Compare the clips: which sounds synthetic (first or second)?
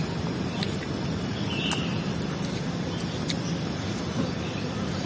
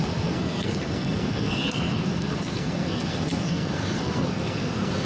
second